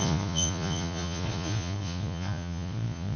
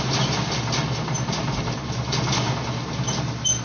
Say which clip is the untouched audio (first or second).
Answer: second